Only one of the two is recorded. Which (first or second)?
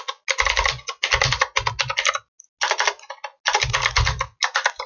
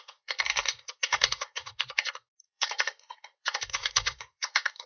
first